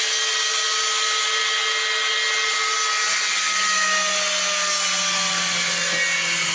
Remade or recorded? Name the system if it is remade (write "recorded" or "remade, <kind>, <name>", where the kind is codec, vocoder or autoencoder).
recorded